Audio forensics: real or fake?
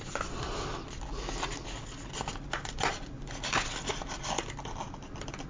real